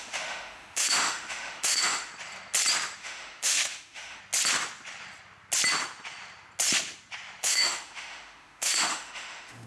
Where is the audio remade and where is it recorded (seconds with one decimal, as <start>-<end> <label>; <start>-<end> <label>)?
0.0-2.1 remade; 2.1-3.0 recorded; 3.0-4.2 remade; 4.2-7.4 recorded; 7.4-9.7 remade